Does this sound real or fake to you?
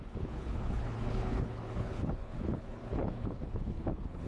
fake